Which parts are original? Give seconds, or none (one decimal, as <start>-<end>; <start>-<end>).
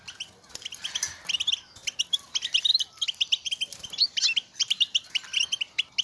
0.0-2.7; 3.5-4.6; 5.4-6.0